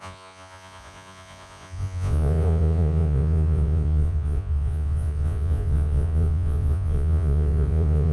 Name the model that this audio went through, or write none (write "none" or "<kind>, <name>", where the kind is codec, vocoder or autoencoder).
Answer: vocoder, Vocos